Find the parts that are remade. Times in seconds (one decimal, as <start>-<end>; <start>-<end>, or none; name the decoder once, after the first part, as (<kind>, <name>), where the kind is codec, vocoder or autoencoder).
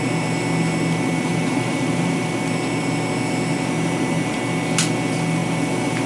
1.3-2.2 (vocoder, BigVGAN v2); 3.5-4.4